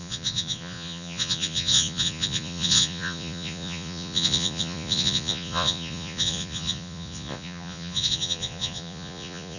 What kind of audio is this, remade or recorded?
remade